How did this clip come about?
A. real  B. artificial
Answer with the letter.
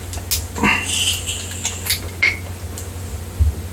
A